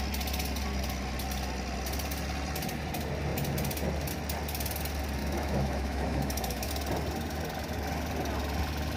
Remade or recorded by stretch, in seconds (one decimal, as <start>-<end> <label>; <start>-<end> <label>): 0.0-5.2 recorded; 5.2-6.7 remade; 6.7-9.0 recorded